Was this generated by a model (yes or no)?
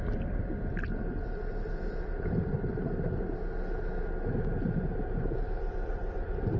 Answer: no